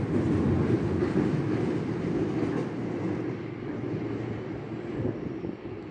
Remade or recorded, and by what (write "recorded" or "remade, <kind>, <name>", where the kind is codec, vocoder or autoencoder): recorded